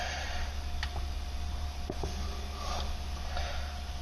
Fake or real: real